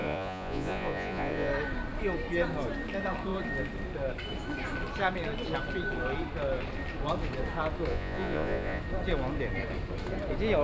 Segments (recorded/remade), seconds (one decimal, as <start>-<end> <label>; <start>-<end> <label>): 0.0-1.5 remade; 1.5-7.9 recorded; 7.9-8.8 remade; 8.8-10.6 recorded